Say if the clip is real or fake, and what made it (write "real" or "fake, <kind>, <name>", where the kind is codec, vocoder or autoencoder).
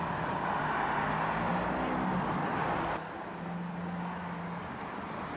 real